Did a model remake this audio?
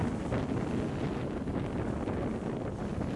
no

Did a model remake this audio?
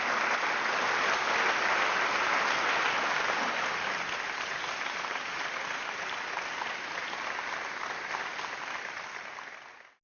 no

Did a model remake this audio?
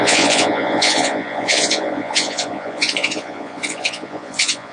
yes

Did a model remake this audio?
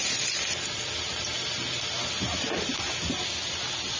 no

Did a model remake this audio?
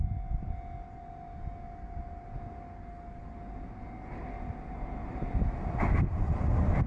no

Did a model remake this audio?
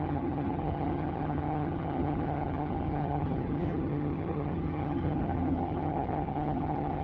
yes